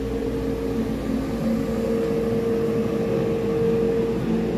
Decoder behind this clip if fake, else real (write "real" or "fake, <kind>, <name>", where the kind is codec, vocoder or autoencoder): real